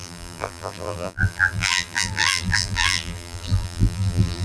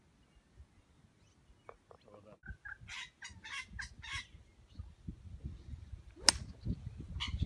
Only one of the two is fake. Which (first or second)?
first